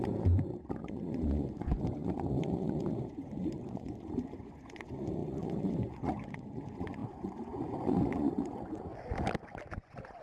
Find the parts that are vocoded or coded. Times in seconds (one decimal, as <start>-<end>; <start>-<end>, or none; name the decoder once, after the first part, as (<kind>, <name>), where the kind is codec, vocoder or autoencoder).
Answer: 0.0-8.9 (vocoder, Vocos); 9.7-10.2